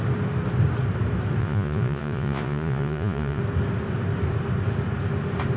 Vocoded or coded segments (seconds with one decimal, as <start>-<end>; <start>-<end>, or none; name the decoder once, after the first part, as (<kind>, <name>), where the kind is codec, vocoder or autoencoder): 1.4-3.4 (vocoder, Vocos)